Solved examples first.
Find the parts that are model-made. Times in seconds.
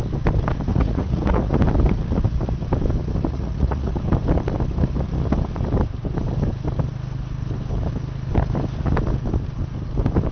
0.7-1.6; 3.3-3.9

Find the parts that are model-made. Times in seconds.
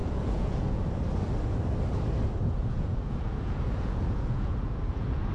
0.0-0.8; 2.6-5.3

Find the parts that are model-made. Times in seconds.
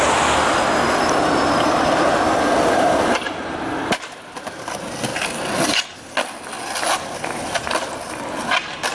none